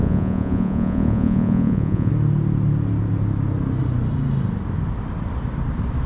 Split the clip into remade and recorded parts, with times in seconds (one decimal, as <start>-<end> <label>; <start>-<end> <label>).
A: 0.0-2.1 remade; 2.1-6.1 recorded